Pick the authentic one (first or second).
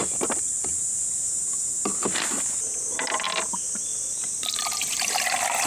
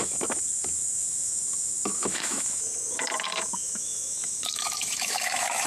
first